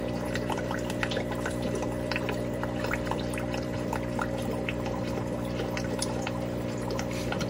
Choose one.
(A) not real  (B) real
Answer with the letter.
A